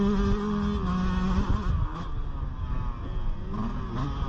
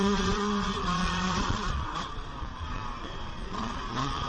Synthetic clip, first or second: second